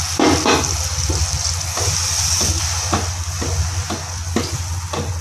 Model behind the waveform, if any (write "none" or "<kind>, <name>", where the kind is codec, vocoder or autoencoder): none